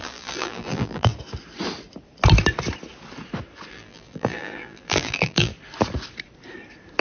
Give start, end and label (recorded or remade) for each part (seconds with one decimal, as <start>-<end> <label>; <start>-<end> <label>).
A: 0.0-1.1 remade; 1.1-3.7 recorded; 3.7-5.5 remade; 5.5-7.0 recorded